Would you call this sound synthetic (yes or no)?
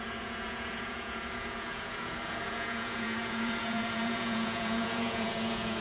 yes